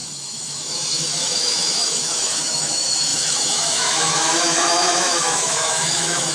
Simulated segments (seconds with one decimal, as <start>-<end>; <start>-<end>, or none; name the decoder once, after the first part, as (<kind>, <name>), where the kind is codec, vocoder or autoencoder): 0.0-6.3 (autoencoder, DAC-VAE)